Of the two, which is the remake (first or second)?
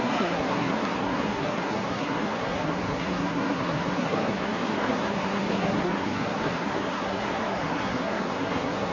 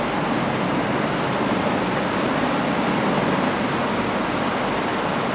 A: first